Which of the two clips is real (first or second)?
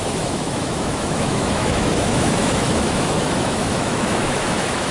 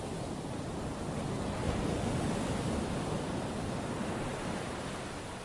second